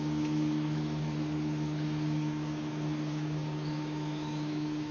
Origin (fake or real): fake